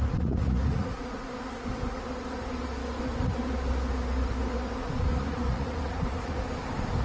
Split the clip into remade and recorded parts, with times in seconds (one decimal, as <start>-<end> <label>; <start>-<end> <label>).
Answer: 0.0-1.3 remade; 1.3-5.1 recorded; 5.1-6.4 remade; 6.4-7.0 recorded